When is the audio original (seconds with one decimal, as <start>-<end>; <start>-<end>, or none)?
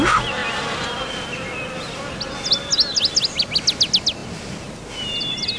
0.0-5.6